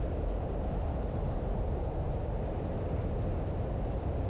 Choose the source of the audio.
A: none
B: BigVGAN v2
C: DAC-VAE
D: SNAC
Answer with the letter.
A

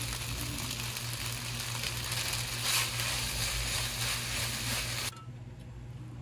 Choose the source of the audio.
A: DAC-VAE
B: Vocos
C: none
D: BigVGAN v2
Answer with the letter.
C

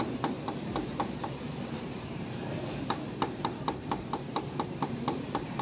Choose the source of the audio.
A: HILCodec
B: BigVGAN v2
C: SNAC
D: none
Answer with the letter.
B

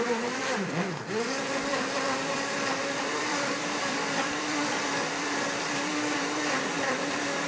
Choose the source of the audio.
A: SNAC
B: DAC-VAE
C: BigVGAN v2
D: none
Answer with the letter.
C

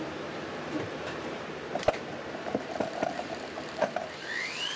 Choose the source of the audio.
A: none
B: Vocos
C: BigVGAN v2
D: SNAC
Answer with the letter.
C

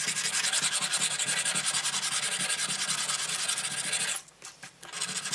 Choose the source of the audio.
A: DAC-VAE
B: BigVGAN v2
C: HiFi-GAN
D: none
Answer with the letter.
D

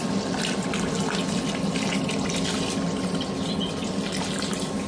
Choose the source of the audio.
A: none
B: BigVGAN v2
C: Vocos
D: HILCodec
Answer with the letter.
A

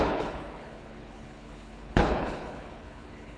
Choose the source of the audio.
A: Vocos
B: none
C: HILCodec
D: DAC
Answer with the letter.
C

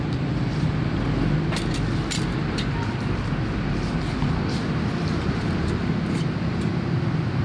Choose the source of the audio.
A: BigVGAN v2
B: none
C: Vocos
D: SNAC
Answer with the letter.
B